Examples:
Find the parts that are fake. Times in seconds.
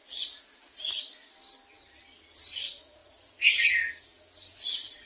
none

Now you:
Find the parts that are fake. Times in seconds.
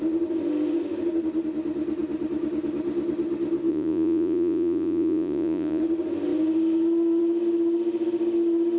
3.7-5.8 (vocoder, Vocos)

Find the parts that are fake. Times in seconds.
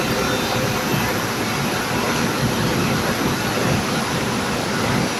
none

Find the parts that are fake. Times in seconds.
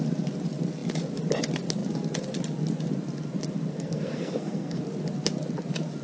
3.7-4.8 (codec, SNAC)